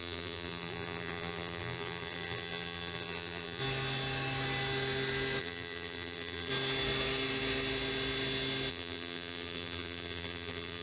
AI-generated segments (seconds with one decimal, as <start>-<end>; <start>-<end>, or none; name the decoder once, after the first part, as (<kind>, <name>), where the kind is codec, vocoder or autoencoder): 0.0-3.6 (vocoder, BigVGAN v2); 5.4-6.5; 8.7-10.8